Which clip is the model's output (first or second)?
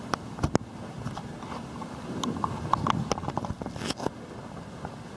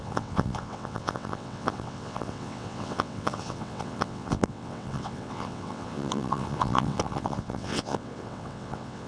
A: second